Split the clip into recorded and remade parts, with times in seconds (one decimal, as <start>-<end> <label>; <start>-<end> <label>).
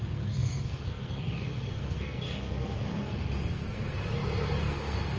0.0-4.0 remade; 4.0-4.6 recorded; 4.6-5.2 remade